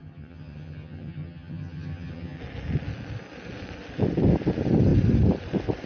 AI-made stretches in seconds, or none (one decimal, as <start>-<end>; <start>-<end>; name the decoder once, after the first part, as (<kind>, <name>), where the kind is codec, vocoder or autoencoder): 0.0-2.4 (vocoder, HiFi-GAN)